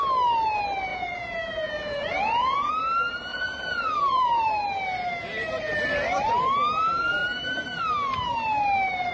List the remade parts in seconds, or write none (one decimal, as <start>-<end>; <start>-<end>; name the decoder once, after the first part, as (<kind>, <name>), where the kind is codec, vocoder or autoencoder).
0.9-2.7 (vocoder, Vocos); 3.3-4.4